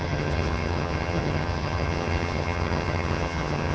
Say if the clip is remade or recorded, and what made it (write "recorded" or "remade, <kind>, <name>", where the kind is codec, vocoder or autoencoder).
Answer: remade, vocoder, HiFi-GAN